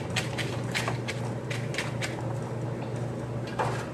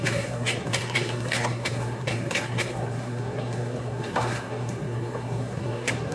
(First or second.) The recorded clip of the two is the first